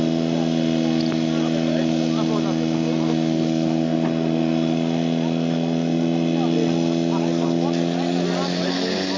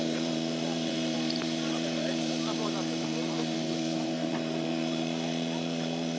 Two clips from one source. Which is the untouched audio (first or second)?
first